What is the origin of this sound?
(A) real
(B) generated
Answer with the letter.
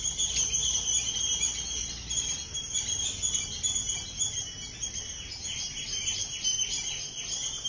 A